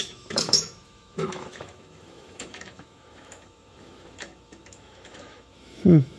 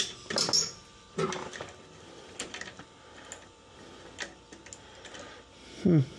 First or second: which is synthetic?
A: first